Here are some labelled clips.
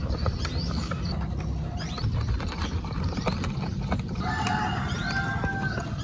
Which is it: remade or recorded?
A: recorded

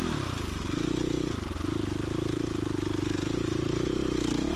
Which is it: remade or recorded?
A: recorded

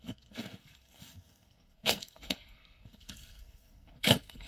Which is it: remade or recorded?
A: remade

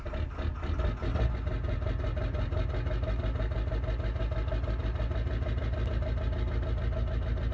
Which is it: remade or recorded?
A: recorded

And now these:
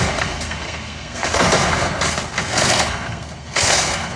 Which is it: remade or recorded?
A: remade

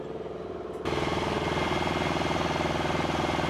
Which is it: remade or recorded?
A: recorded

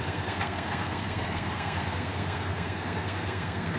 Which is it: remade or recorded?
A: remade